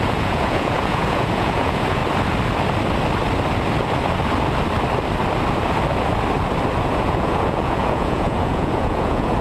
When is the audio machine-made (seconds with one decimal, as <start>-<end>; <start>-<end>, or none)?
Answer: 0.0-2.0; 6.8-9.4